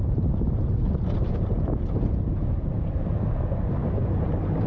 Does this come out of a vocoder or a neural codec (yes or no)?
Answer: yes